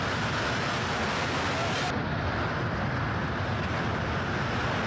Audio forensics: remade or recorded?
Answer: recorded